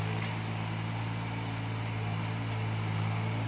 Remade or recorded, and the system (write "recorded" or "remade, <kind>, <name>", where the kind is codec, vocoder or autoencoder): recorded